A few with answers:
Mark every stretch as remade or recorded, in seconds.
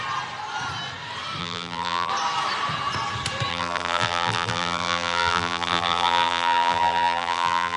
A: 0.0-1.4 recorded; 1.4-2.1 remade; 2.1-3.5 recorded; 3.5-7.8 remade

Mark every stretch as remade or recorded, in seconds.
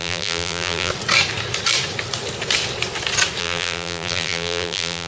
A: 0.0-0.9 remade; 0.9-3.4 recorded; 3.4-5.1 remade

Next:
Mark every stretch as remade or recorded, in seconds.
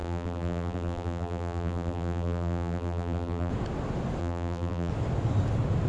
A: 0.0-3.5 remade; 3.5-4.2 recorded; 4.2-4.9 remade; 4.9-5.9 recorded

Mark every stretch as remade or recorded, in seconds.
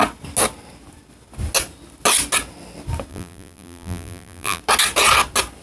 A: 0.0-3.1 recorded; 3.1-4.6 remade; 4.6-5.6 recorded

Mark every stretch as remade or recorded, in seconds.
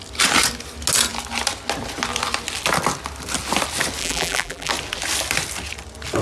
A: 0.0-4.0 recorded; 4.0-4.7 remade; 4.7-6.2 recorded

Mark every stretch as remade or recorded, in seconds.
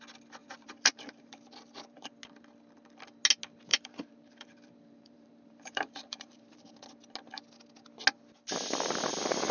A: 0.0-0.4 recorded; 0.4-2.1 remade; 2.1-3.7 recorded; 3.7-6.8 remade; 6.8-9.5 recorded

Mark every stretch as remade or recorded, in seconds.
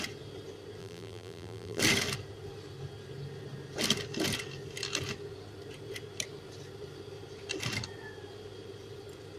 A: 0.0-0.8 recorded; 0.8-1.8 remade; 1.8-9.4 recorded